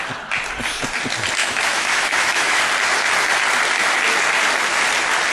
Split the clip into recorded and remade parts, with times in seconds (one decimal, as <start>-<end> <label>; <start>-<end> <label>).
0.0-1.4 recorded; 1.4-2.6 remade; 2.6-5.3 recorded